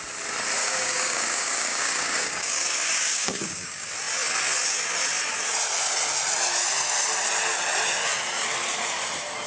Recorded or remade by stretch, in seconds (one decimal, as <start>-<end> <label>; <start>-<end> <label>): 0.0-0.6 recorded; 0.6-3.9 remade; 3.9-9.5 recorded